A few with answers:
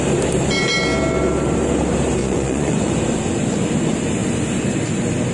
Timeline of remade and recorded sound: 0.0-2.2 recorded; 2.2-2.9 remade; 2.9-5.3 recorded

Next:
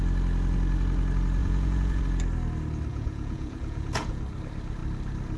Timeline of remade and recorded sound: 0.0-1.4 recorded; 1.4-2.0 remade; 2.0-2.9 recorded; 2.9-4.2 remade; 4.2-5.4 recorded

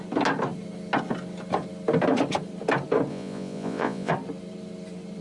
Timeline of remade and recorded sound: 0.0-3.1 recorded; 3.1-4.1 remade; 4.1-5.2 recorded